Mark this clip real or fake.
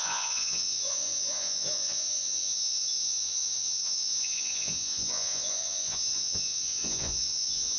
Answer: fake